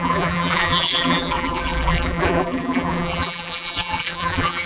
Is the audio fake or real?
fake